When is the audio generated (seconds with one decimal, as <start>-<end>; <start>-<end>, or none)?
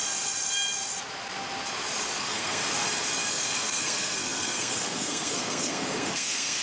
2.2-2.6; 3.3-6.6